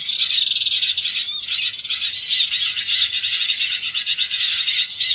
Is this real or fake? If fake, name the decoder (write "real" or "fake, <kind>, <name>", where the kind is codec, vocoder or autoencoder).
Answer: real